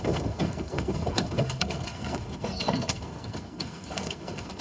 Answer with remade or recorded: remade